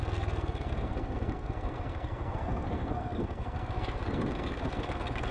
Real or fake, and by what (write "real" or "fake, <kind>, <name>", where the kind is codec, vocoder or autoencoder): fake, codec, SNAC